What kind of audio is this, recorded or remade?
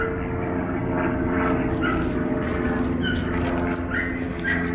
recorded